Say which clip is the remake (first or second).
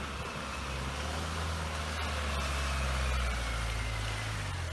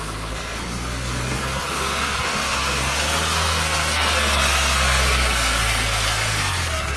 second